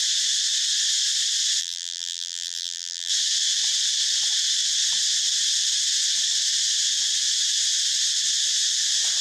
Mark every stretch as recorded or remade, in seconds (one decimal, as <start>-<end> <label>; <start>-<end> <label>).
0.0-1.6 recorded; 1.6-3.1 remade; 3.1-9.2 recorded